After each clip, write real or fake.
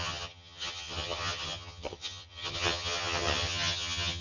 fake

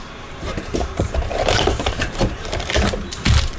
fake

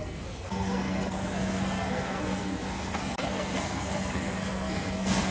fake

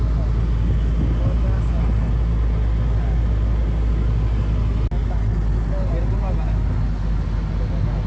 real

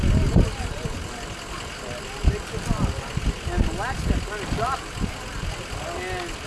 real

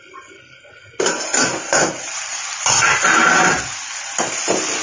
real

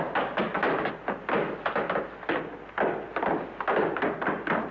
real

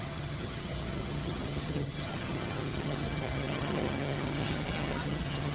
fake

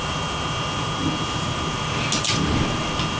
real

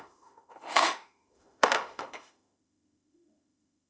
fake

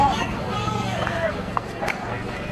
fake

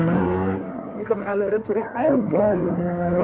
fake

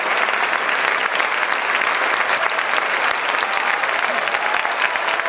real